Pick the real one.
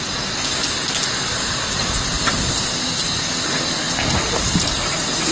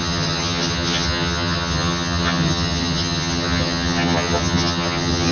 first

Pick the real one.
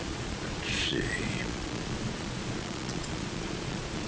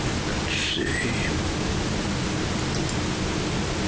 second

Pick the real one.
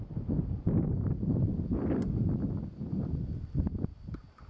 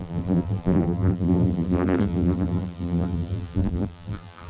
first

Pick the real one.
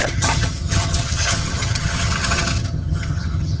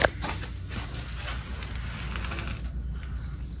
second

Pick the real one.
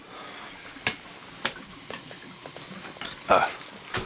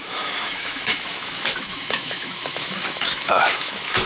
first